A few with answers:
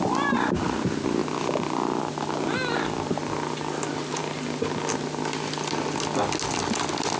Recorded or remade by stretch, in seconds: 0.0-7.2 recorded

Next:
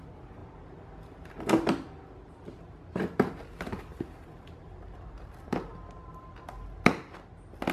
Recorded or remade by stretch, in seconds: 0.0-0.4 recorded; 0.4-1.3 remade; 1.3-3.9 recorded; 3.9-5.3 remade; 5.3-7.7 recorded

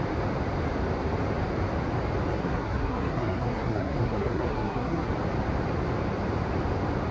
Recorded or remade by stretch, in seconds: 0.0-2.3 recorded; 2.3-5.1 remade; 5.1-7.1 recorded

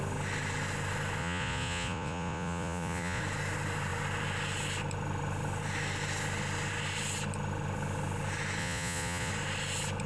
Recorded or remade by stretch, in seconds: 0.0-1.2 recorded; 1.2-3.2 remade; 3.2-8.6 recorded; 8.6-9.3 remade; 9.3-10.1 recorded

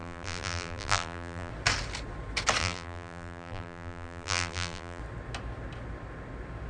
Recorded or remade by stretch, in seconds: 0.0-1.5 remade; 1.5-2.6 recorded; 2.6-5.0 remade; 5.0-6.7 recorded

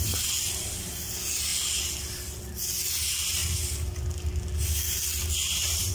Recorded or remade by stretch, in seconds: 0.0-5.9 recorded

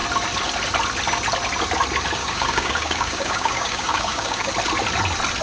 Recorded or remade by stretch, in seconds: 0.0-2.2 recorded; 2.2-4.5 remade; 4.5-5.4 recorded